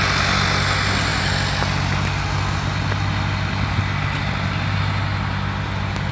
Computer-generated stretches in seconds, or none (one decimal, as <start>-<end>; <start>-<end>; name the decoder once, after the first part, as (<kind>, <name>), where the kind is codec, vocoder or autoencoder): none